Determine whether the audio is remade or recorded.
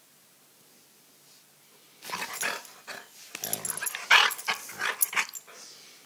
recorded